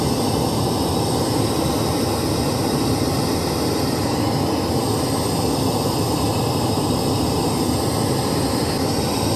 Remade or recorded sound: recorded